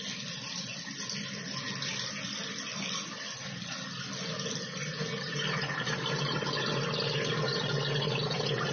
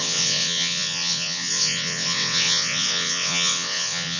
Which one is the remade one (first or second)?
second